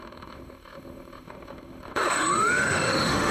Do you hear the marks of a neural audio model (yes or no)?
yes